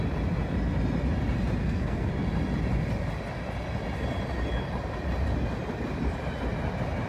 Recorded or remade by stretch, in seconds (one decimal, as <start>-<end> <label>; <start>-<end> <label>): 0.0-1.6 recorded; 1.6-2.1 remade; 2.1-7.1 recorded

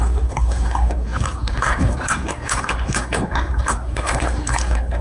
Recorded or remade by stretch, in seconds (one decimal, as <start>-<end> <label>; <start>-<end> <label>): 0.0-5.0 remade

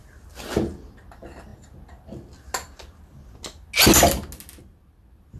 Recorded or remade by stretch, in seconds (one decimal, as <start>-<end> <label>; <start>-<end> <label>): 0.0-5.4 recorded

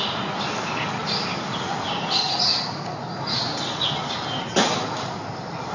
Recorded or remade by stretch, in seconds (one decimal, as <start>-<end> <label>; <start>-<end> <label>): 0.0-5.7 recorded

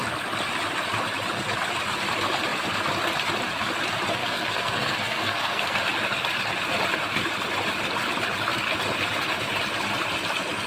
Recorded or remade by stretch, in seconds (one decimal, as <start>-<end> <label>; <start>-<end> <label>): 0.0-4.2 recorded; 4.2-5.8 remade; 5.8-10.7 recorded

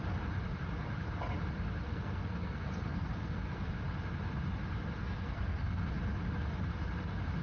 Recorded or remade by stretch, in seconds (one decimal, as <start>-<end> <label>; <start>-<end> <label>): 0.0-1.9 recorded; 1.9-3.7 remade; 3.7-5.0 recorded; 5.0-5.9 remade; 5.9-7.4 recorded

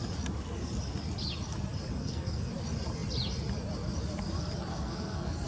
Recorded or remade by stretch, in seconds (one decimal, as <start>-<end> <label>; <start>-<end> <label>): 0.0-2.0 recorded; 2.0-2.5 remade; 2.5-4.7 recorded; 4.7-5.5 remade